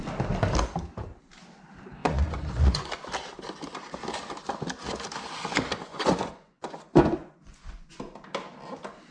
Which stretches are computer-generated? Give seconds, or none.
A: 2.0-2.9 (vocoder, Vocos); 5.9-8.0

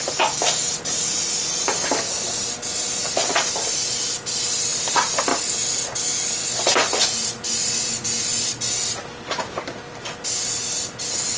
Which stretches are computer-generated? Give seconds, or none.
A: none